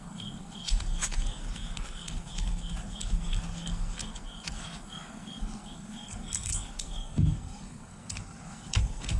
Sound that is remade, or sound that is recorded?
remade